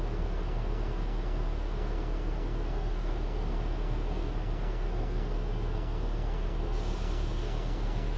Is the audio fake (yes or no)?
yes